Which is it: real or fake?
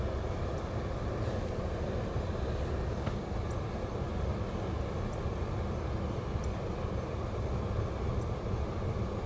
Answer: real